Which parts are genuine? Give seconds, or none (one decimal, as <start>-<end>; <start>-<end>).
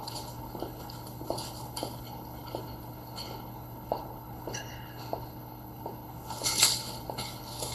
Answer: none